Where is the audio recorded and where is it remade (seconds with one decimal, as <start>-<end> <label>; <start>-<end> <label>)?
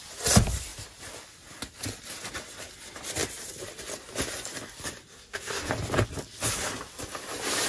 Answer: 0.0-5.1 recorded; 5.1-5.7 remade; 5.7-7.7 recorded